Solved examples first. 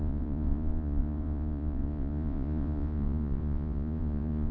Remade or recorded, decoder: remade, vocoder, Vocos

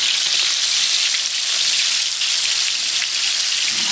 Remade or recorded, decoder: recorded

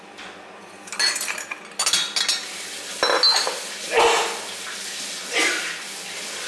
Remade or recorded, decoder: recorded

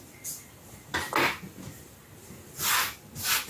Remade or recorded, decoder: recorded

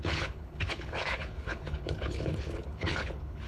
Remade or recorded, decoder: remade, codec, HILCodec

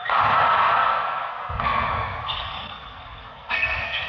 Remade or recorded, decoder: remade, codec, SNAC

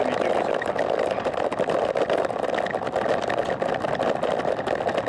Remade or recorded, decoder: recorded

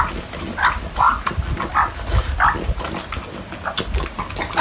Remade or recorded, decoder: recorded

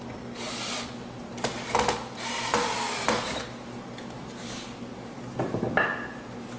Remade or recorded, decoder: recorded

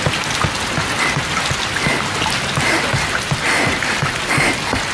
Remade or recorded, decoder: recorded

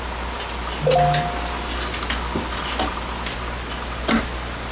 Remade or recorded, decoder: recorded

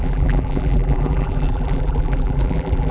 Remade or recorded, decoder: remade, vocoder, BigVGAN v2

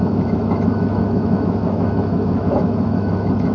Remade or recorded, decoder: remade, autoencoder, DAC-VAE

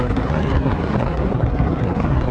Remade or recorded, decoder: remade, codec, SNAC